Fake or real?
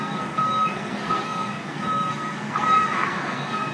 fake